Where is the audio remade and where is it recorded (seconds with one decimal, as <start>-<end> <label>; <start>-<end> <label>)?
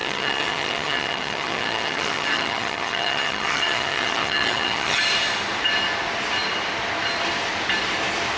0.0-5.0 remade; 5.0-8.4 recorded